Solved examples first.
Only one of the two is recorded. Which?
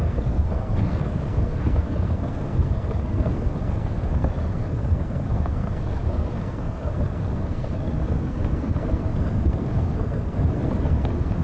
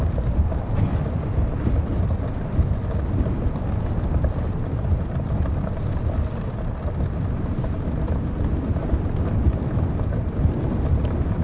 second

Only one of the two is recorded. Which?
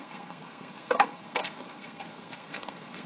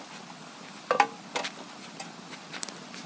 second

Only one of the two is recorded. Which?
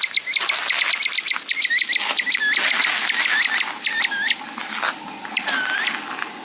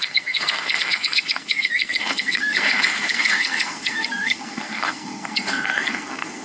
first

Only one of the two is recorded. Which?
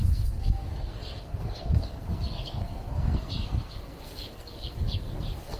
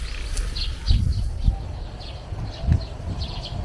second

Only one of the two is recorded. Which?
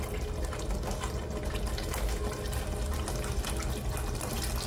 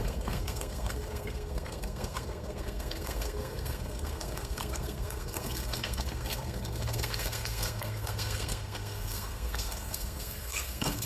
first